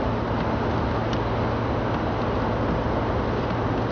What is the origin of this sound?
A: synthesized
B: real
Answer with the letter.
B